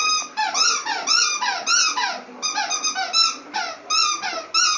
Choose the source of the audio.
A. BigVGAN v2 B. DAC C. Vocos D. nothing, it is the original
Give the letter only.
D